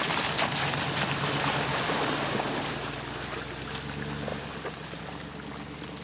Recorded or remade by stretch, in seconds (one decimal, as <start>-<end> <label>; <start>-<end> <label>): 0.0-6.0 recorded